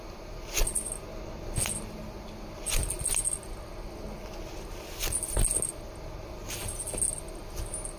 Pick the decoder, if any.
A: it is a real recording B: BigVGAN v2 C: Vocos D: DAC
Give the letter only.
A